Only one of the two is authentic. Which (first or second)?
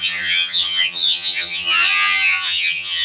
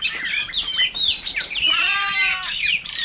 second